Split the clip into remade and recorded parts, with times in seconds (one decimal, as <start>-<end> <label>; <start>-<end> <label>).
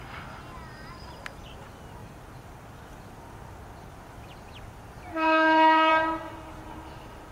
0.0-5.1 recorded; 5.1-5.9 remade; 5.9-7.3 recorded